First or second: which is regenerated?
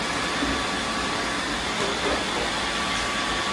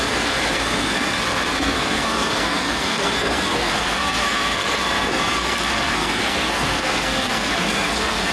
second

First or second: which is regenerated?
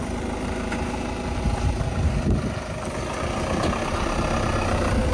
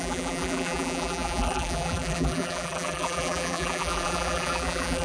second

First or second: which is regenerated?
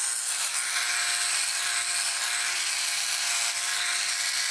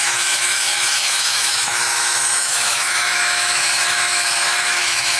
second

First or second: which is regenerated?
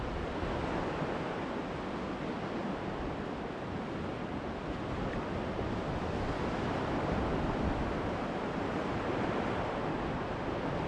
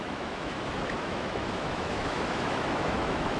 second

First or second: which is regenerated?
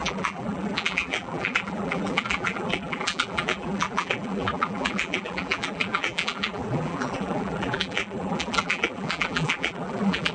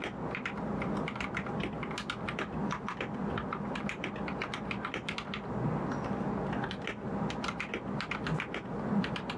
first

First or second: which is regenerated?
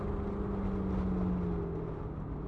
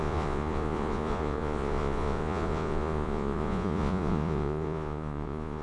second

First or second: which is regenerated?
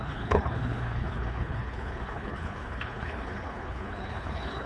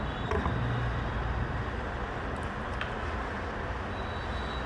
first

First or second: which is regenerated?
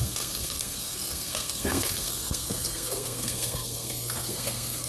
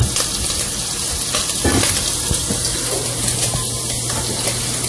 first